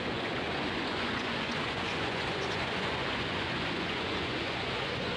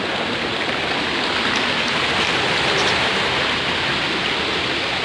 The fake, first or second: first